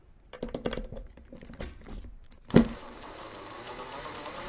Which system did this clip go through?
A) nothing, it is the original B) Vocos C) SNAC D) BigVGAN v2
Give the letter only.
D